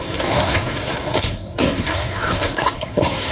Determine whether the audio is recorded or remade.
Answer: remade